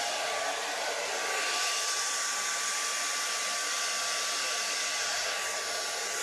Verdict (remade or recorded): recorded